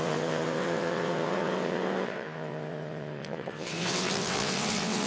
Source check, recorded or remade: remade